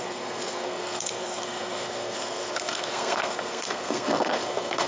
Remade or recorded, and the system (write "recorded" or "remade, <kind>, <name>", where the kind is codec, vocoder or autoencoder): remade, codec, SNAC